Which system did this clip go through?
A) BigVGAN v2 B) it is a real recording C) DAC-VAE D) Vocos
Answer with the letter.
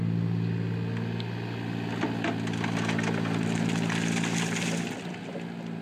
B